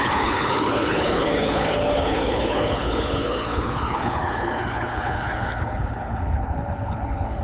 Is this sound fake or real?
fake